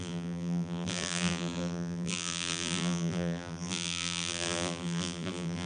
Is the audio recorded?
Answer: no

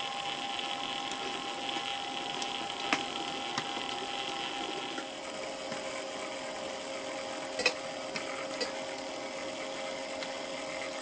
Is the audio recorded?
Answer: yes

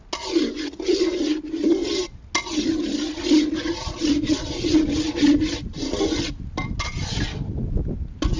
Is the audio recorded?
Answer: yes